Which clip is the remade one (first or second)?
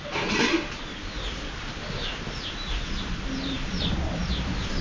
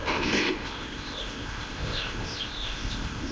second